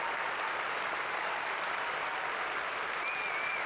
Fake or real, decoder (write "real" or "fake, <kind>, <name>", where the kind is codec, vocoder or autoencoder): real